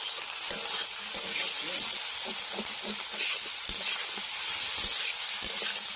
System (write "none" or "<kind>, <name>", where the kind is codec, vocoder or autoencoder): none